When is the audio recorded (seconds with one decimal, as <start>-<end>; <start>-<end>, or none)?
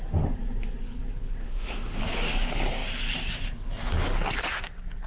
0.0-1.4; 2.0-5.1